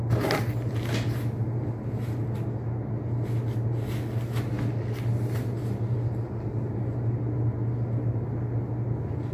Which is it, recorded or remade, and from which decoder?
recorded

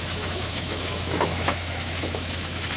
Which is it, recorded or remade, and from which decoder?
remade, autoencoder, DAC-VAE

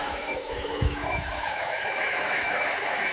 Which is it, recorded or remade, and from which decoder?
remade, autoencoder, DAC-VAE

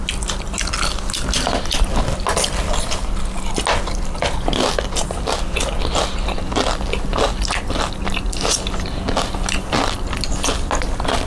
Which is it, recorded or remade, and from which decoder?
recorded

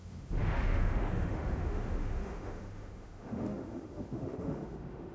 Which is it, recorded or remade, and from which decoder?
remade, autoencoder, DAC-VAE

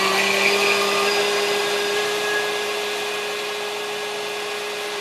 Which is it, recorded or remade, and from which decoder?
recorded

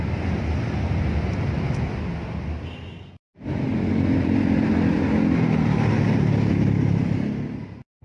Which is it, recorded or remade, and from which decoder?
recorded